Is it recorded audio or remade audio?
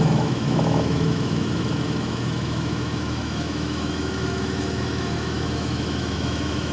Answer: remade